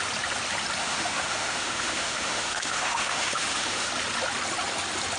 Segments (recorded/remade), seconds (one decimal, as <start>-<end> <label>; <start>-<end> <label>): 0.0-0.8 recorded; 0.8-3.9 remade; 3.9-5.2 recorded